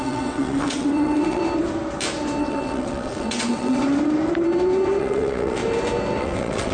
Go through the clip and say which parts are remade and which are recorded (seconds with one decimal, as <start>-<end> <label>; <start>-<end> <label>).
0.0-1.4 remade; 1.4-2.4 recorded; 2.4-3.8 remade; 3.8-5.0 recorded; 5.0-5.6 remade; 5.6-6.2 recorded; 6.2-6.7 remade